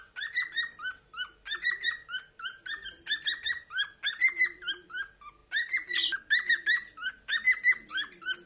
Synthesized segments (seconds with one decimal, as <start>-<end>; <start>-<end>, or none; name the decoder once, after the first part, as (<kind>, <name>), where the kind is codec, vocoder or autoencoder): none